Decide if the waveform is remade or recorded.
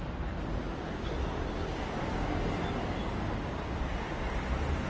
recorded